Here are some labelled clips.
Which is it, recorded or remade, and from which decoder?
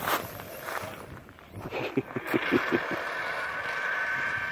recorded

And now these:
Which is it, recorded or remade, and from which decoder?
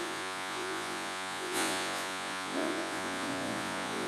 remade, vocoder, Vocos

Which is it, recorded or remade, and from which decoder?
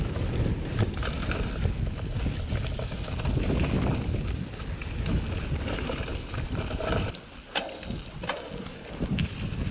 recorded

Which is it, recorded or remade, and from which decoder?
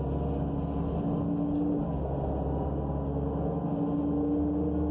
recorded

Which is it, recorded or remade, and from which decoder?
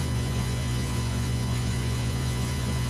remade, vocoder, Vocos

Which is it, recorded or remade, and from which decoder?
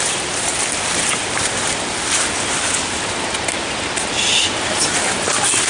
recorded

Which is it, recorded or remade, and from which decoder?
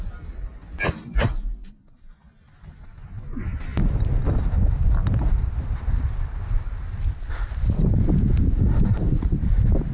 recorded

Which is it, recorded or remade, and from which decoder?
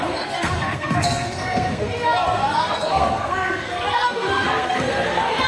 remade, codec, SNAC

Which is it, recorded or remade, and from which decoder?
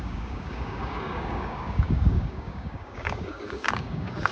remade, codec, DAC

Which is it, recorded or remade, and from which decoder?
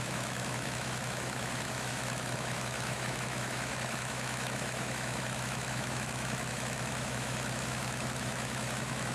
remade, autoencoder, DAC-VAE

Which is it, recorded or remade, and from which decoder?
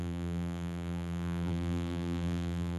remade, vocoder, BigVGAN v2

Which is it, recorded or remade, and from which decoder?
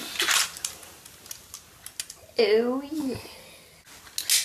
recorded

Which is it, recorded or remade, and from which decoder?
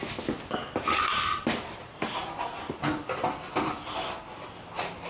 recorded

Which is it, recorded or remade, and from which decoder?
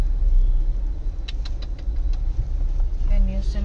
recorded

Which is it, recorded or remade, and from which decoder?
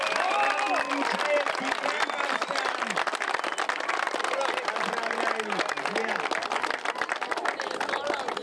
recorded